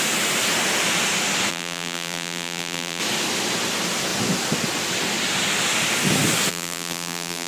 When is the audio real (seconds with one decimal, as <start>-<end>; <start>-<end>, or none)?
0.0-1.5; 3.0-6.5